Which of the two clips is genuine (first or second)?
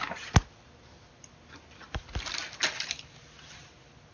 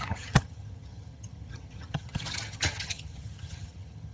first